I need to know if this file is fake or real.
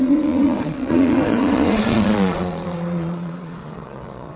fake